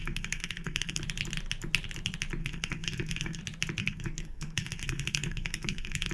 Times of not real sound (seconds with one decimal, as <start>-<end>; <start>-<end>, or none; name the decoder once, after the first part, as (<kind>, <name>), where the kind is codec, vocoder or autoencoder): 0.0-1.0 (codec, SNAC); 2.4-3.4; 3.8-6.1

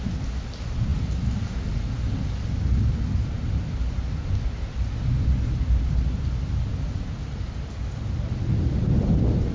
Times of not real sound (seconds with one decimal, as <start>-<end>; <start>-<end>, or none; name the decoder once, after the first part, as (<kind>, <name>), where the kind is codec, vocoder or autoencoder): none

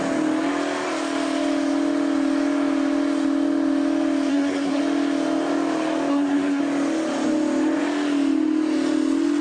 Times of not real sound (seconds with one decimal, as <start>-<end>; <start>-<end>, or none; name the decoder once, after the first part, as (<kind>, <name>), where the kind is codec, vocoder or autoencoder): 4.3-4.8 (codec, SNAC); 6.1-6.6